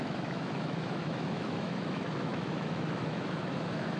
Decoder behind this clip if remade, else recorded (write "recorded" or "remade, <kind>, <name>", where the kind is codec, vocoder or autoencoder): remade, autoencoder, DAC-VAE